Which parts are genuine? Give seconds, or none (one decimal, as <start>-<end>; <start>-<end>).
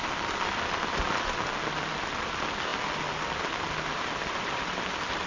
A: 0.0-5.3